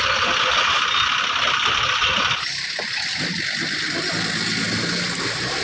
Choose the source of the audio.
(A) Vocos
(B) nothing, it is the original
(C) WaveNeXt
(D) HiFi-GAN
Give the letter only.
B